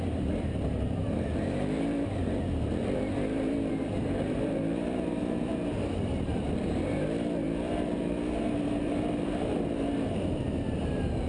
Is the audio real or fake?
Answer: fake